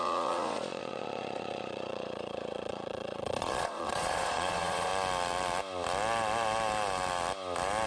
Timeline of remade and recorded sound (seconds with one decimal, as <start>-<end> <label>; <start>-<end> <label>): 0.0-4.9 remade; 4.9-7.9 recorded